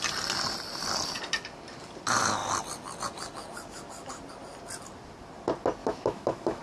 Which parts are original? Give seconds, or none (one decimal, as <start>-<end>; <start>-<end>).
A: 0.0-5.8